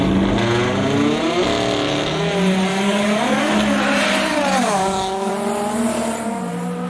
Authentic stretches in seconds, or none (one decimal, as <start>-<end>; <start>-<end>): 0.0-2.7; 3.5-4.6; 5.3-6.9